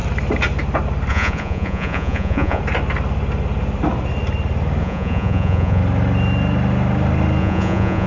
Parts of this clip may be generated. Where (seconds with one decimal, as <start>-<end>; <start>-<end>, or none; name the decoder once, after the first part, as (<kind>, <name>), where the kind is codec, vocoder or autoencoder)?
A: 1.1-2.6 (vocoder, Vocos); 4.8-5.8; 7.4-8.1